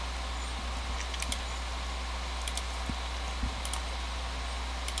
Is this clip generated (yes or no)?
no